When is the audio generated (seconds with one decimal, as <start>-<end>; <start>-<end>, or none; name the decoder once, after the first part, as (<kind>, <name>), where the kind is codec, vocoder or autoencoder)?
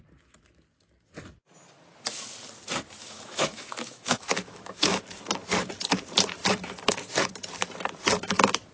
3.0-5.0 (autoencoder, DAC-VAE)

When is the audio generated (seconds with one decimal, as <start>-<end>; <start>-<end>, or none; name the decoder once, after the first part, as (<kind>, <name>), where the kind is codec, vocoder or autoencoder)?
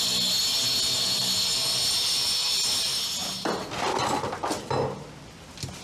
none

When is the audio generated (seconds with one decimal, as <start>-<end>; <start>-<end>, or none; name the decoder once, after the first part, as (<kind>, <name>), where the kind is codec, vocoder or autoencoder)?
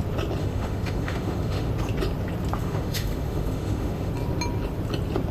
0.4-1.7 (autoencoder, DAC-VAE); 2.6-4.1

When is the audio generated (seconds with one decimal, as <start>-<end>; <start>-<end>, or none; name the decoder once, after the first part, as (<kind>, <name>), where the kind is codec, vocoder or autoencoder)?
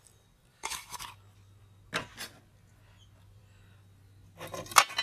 0.5-1.0 (autoencoder, DAC-VAE)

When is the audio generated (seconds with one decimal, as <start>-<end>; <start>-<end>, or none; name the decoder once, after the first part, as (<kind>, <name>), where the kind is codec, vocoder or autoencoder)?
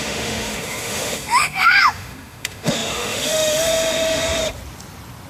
0.0-4.4 (autoencoder, DAC-VAE)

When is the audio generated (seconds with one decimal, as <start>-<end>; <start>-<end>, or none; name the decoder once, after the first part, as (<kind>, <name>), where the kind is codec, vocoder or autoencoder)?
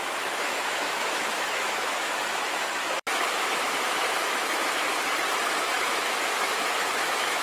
0.0-4.9 (autoencoder, DAC-VAE); 5.6-7.4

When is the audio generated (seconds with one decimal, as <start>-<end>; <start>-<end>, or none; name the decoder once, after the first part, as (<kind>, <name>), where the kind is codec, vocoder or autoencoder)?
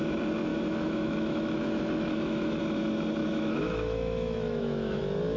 0.5-2.6 (autoencoder, DAC-VAE); 3.2-5.0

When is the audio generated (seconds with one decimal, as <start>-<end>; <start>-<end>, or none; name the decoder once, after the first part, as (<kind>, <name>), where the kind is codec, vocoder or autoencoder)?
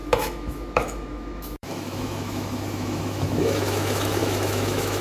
0.0-5.0 (autoencoder, DAC-VAE)